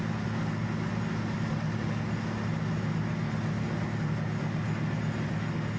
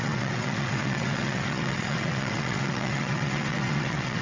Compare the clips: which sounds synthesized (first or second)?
second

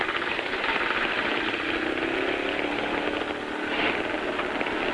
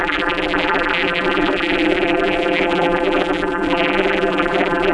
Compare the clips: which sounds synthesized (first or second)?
second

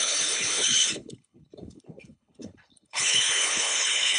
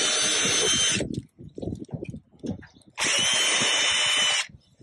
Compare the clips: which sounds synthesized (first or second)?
first